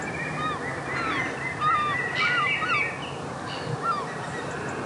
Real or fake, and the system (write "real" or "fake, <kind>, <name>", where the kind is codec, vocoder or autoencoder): real